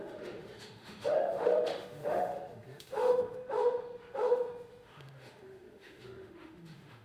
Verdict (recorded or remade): remade